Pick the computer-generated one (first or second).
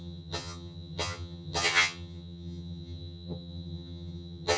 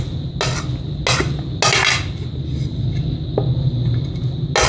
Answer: first